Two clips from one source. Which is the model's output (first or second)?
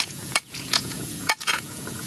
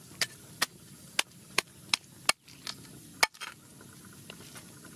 first